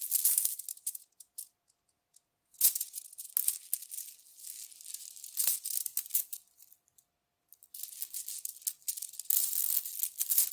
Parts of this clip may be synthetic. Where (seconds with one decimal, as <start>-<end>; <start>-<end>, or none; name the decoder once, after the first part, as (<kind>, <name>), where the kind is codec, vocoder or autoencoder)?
0.7-3.3 (vocoder, Vocos)